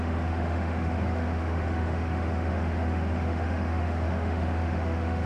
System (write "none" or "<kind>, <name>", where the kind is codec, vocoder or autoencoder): autoencoder, DAC-VAE